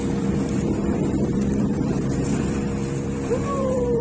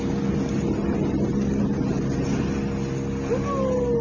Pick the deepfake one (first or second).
first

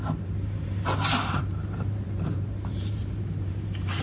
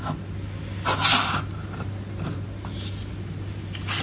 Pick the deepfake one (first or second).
first